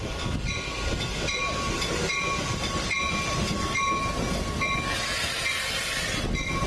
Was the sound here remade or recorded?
recorded